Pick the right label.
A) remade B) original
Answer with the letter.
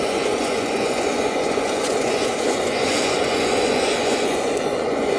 A